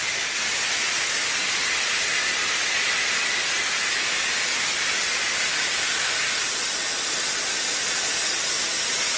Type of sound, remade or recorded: recorded